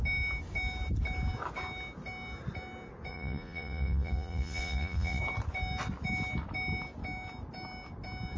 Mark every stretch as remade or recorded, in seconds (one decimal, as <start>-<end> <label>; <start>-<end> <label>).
0.0-3.1 recorded; 3.1-5.2 remade; 5.2-8.4 recorded